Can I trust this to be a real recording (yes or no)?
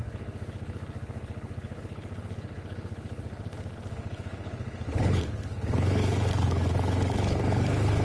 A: no